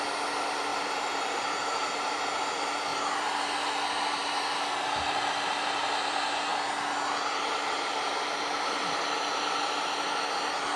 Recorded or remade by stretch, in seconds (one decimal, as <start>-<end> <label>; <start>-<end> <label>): 0.0-0.7 recorded; 0.7-2.1 remade; 2.1-2.9 recorded; 2.9-3.4 remade; 3.4-10.8 recorded